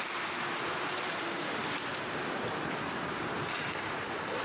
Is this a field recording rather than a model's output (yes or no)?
no